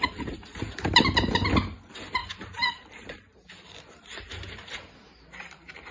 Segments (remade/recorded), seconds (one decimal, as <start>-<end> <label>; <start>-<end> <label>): 0.0-0.9 remade; 0.9-2.2 recorded; 2.2-5.9 remade